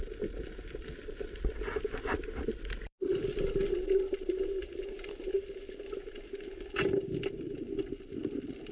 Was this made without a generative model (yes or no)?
yes